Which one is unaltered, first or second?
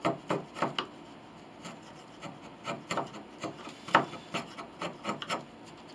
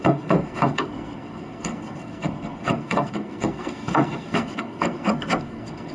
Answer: first